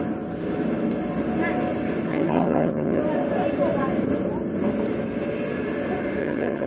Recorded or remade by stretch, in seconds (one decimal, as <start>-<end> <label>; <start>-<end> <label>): 0.0-2.1 recorded; 2.1-3.0 remade; 3.0-6.2 recorded; 6.2-6.7 remade